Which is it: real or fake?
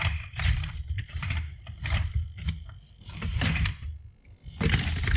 real